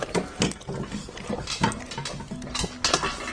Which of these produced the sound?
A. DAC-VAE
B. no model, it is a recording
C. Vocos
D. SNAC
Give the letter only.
B